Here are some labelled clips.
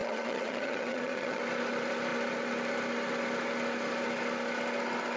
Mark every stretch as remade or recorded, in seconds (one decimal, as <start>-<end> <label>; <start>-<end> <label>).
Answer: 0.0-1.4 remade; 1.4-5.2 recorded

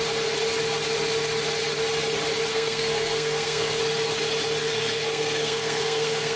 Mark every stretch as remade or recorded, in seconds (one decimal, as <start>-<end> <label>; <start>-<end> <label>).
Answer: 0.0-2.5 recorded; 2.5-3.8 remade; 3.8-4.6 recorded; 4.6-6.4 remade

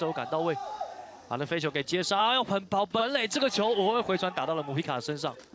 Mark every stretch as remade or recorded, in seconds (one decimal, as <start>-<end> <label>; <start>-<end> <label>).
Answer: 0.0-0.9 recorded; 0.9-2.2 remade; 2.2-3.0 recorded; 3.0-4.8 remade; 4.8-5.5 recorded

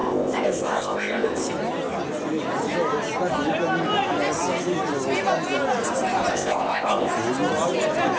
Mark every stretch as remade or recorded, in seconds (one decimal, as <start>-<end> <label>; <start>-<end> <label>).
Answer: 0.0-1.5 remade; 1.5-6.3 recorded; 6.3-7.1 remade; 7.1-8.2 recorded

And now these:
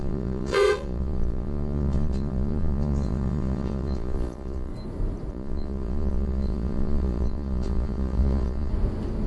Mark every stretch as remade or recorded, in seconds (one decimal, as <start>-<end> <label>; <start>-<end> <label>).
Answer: 0.0-4.7 remade; 4.7-5.3 recorded; 5.3-8.7 remade; 8.7-9.3 recorded

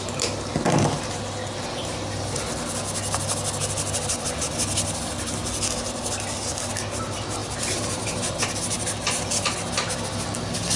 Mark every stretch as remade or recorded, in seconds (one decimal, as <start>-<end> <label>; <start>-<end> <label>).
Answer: 0.0-7.4 recorded; 7.4-9.5 remade; 9.5-10.8 recorded